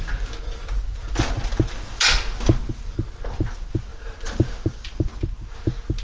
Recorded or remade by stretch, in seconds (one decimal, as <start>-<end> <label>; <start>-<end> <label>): 0.0-3.9 recorded; 3.9-5.1 remade; 5.1-6.0 recorded